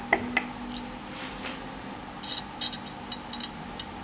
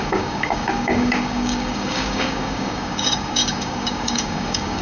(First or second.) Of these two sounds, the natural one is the first